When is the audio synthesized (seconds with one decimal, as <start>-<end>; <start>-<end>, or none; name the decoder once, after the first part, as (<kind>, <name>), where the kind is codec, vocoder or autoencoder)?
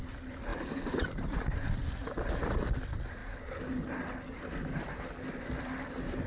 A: none